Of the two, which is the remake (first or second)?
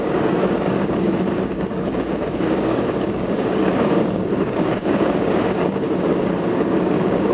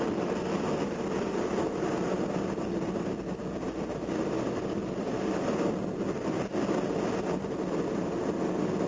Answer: first